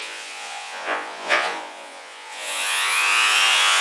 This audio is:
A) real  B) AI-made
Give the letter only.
B